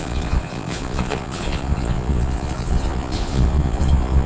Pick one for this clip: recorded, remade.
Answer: remade